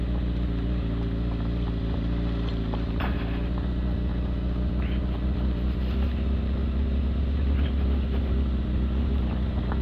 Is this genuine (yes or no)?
yes